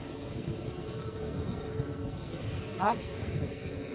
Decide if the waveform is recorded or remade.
remade